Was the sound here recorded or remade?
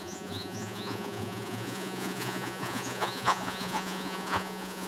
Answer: remade